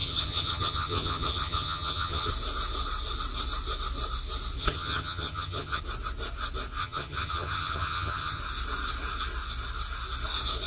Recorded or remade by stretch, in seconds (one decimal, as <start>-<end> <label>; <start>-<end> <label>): 0.0-2.3 remade; 2.3-4.6 recorded; 4.6-5.8 remade; 5.8-6.8 recorded; 6.8-8.4 remade; 8.4-10.7 recorded